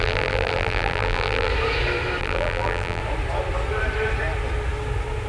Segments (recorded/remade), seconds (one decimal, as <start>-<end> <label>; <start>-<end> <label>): 0.0-1.5 remade; 1.5-2.2 recorded; 2.2-3.0 remade; 3.0-5.3 recorded